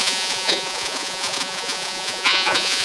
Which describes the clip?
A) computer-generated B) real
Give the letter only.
A